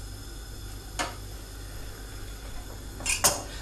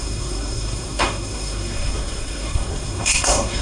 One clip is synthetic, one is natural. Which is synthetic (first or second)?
second